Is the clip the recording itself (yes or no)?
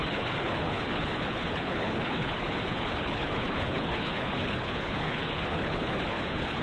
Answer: no